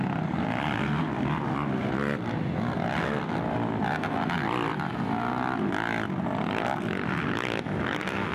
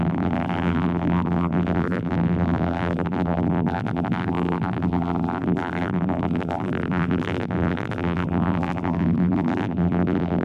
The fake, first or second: second